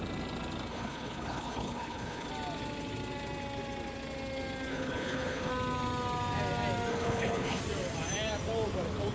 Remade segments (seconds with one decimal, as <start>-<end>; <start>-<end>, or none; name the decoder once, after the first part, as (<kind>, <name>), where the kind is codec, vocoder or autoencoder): 0.7-2.3 (codec, HILCodec); 4.7-5.5; 6.9-7.6

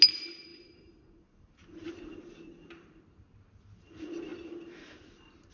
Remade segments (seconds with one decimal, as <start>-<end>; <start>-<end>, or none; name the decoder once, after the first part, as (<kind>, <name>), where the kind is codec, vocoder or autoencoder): none